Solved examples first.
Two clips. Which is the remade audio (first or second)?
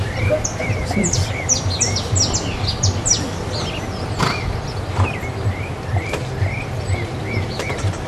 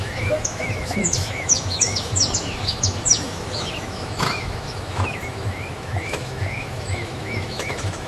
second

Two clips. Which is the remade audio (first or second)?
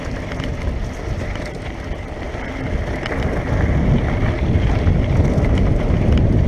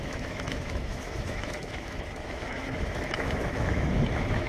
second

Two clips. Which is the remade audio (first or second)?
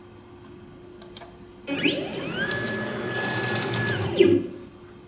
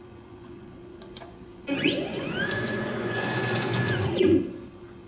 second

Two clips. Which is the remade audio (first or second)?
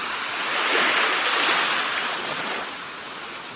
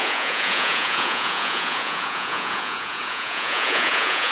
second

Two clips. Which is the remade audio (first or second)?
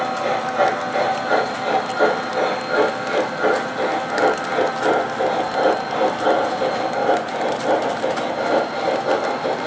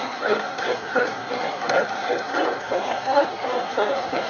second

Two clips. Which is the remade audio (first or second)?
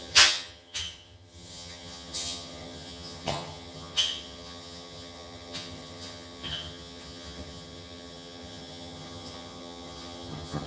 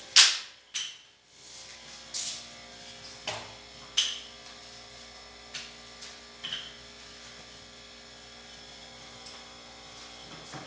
first